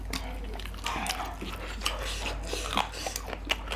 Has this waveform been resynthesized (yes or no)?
no